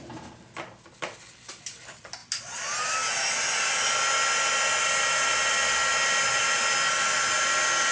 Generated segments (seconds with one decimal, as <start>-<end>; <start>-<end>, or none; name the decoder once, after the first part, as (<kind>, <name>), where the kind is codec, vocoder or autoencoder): none